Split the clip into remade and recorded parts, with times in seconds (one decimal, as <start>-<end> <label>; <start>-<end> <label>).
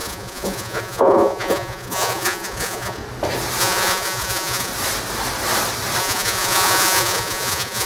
0.0-3.0 remade; 3.0-3.6 recorded; 3.6-4.7 remade; 4.7-6.0 recorded; 6.0-7.9 remade